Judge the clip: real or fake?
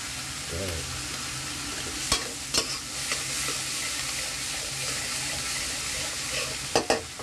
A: real